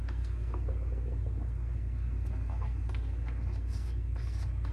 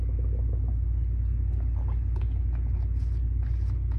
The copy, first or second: first